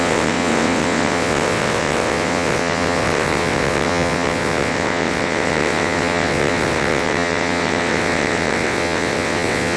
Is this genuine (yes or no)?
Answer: no